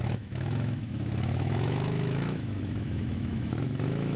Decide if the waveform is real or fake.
fake